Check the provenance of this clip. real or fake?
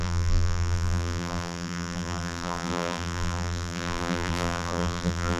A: fake